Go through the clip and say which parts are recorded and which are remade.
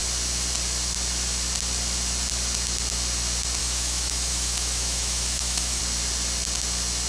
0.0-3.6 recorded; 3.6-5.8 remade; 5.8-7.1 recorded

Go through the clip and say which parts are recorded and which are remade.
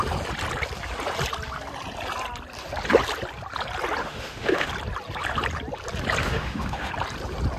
0.0-4.0 recorded; 4.0-4.7 remade; 4.7-6.2 recorded; 6.2-6.9 remade; 6.9-7.6 recorded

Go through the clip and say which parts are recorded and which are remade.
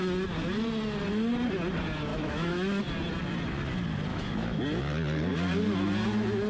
0.0-2.1 recorded; 2.1-2.8 remade; 2.8-4.1 recorded; 4.1-4.6 remade; 4.6-6.5 recorded